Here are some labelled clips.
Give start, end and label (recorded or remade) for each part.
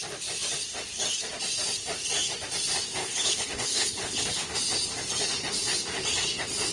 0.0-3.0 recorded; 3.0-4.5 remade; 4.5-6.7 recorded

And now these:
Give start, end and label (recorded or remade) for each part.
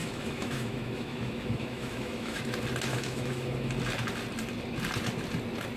0.0-2.4 remade; 2.4-2.9 recorded; 2.9-3.7 remade; 3.7-5.8 recorded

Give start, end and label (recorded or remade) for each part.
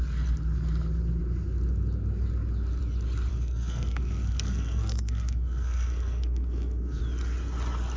0.0-3.3 recorded; 3.3-7.0 remade; 7.0-8.0 recorded